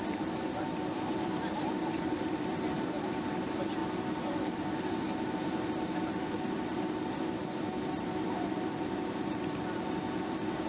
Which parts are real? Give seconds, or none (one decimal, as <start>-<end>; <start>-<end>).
none